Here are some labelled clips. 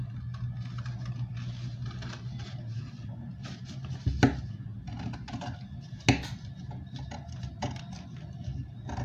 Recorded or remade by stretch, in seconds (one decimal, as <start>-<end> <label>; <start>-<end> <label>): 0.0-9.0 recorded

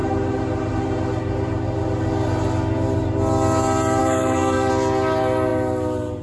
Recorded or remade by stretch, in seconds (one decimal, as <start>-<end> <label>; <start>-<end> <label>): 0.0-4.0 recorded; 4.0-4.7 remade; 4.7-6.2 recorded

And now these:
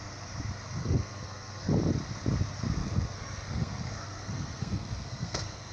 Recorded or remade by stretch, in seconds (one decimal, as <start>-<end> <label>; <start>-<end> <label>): 0.0-0.8 recorded; 0.8-1.7 remade; 1.7-2.8 recorded; 2.8-5.7 remade

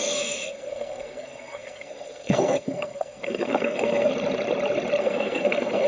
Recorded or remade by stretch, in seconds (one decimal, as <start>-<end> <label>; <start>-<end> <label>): 0.0-4.1 remade; 4.1-5.0 recorded; 5.0-5.9 remade

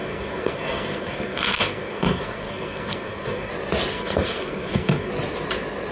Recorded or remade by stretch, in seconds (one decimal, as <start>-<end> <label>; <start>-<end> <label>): 0.0-3.5 remade; 3.5-3.9 recorded; 3.9-5.1 remade; 5.1-5.9 recorded

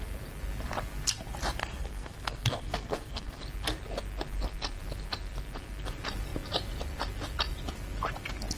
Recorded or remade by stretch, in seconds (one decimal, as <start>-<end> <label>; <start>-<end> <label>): 0.0-1.6 recorded; 1.6-3.4 remade; 3.4-8.6 recorded